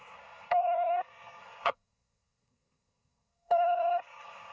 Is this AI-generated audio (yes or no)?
yes